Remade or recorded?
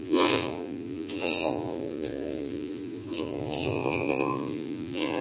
remade